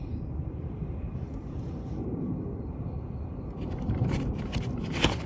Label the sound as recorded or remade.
remade